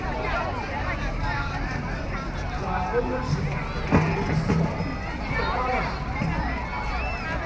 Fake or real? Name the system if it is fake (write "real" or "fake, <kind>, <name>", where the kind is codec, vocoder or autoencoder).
real